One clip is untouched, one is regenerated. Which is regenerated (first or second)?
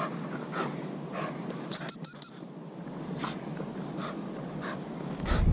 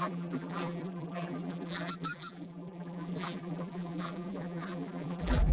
second